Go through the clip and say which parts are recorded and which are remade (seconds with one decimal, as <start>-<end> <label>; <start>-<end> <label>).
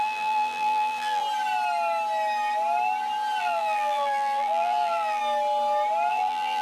0.0-1.2 remade; 1.2-3.4 recorded; 3.4-5.2 remade; 5.2-6.1 recorded; 6.1-6.6 remade